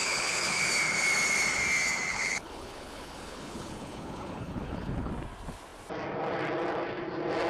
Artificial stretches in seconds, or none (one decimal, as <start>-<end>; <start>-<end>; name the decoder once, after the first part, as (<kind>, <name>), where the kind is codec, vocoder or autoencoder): 0.0-0.6 (codec, HILCodec); 2.1-5.1